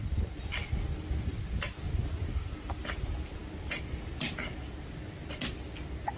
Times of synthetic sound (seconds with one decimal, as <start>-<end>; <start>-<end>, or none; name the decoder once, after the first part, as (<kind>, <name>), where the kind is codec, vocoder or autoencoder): none